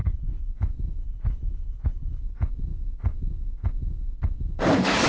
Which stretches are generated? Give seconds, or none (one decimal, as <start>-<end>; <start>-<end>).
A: 0.0-0.5; 1.0-2.2